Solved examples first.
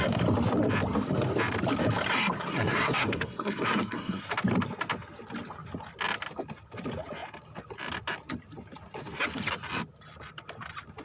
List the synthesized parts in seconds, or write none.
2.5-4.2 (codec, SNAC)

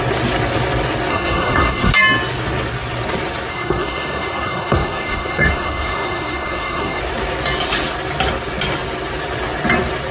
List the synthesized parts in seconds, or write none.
1.1-1.9 (codec, SNAC); 3.5-7.0

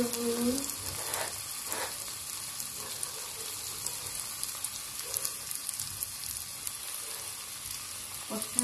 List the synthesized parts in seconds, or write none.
none

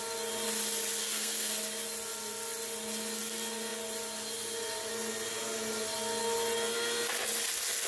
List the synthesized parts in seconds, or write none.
1.0-1.5 (codec, SNAC)